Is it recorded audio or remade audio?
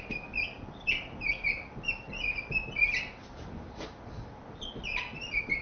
recorded